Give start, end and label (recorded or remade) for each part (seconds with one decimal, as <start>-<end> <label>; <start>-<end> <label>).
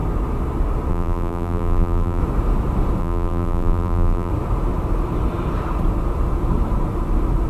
0.0-0.9 recorded; 0.9-2.2 remade; 2.2-3.0 recorded; 3.0-4.3 remade; 4.3-7.5 recorded